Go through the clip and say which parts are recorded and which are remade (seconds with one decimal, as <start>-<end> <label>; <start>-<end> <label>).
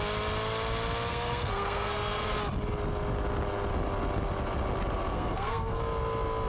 0.0-1.1 recorded; 1.1-2.4 remade; 2.4-5.1 recorded; 5.1-5.8 remade; 5.8-6.5 recorded